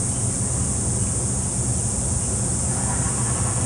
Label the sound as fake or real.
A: real